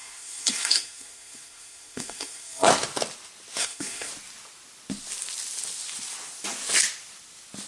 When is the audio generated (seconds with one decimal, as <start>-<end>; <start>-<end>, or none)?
0.0-2.7; 3.6-4.1